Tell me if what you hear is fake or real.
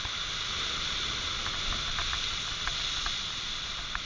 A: real